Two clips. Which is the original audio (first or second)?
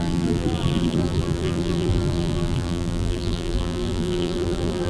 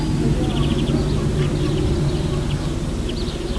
second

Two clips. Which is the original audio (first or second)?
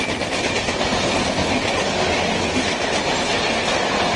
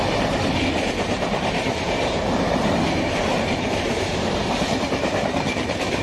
first